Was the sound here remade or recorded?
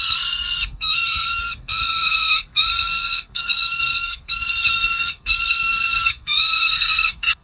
remade